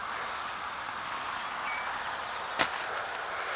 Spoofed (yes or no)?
no